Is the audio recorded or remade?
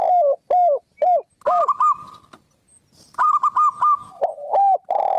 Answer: recorded